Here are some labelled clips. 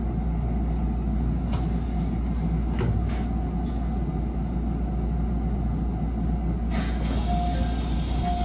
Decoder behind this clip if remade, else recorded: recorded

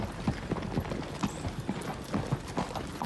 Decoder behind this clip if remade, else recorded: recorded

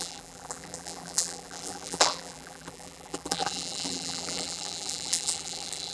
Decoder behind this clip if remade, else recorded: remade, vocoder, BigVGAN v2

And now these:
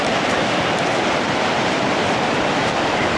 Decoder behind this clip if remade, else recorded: remade, vocoder, BigVGAN v2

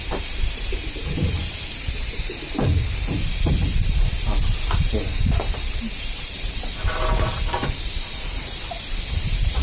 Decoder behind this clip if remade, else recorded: remade, vocoder, BigVGAN v2